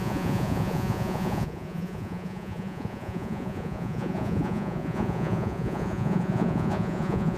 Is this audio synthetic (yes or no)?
yes